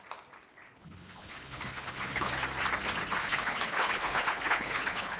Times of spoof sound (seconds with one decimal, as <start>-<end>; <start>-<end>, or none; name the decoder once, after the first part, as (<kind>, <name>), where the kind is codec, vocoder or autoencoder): 0.5-2.3 (codec, HILCodec); 3.2-5.2